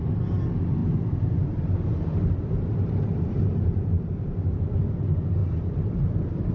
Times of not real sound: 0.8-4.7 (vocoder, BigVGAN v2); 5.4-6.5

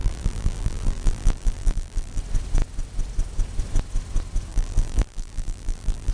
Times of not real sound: 0.0-2.2 (vocoder, BigVGAN v2); 4.5-6.1

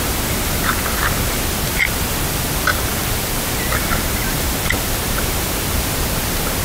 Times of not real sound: 2.7-5.7 (vocoder, BigVGAN v2)

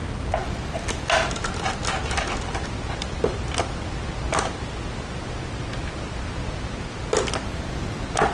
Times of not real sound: none

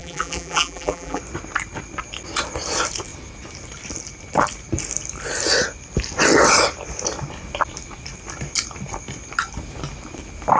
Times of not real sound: 0.0-1.2 (vocoder, BigVGAN v2)